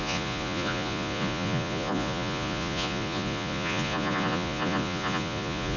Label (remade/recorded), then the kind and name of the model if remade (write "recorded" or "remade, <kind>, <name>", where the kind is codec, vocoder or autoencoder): remade, vocoder, Vocos